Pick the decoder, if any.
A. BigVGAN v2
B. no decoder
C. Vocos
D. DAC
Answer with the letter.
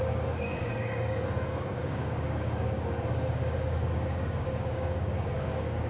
D